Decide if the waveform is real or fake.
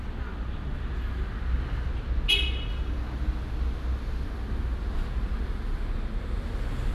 real